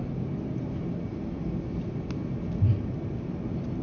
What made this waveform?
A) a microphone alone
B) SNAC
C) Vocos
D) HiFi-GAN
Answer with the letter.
A